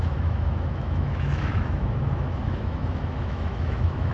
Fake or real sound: fake